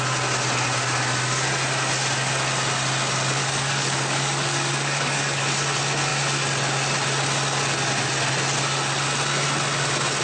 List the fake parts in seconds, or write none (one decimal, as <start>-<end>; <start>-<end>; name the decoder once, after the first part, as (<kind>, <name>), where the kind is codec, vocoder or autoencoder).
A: 3.4-5.4 (codec, DAC)